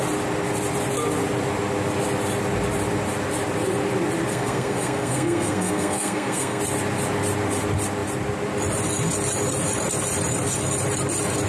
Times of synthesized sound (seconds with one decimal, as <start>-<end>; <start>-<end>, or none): 4.3-6.6